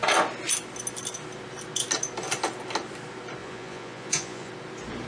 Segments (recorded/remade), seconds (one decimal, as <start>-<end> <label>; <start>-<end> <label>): 0.0-3.4 recorded; 3.4-4.5 remade; 4.5-5.1 recorded